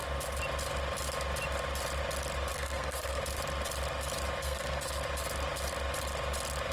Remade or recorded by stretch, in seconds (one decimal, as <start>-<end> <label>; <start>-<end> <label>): 0.0-2.5 recorded; 2.5-3.2 remade; 3.2-4.4 recorded; 4.4-5.0 remade; 5.0-6.7 recorded